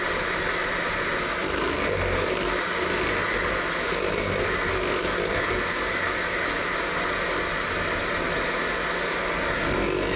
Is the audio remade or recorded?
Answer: recorded